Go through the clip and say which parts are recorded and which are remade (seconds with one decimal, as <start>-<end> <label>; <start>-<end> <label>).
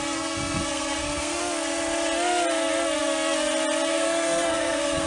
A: 0.0-1.4 remade; 1.4-3.9 recorded; 3.9-5.1 remade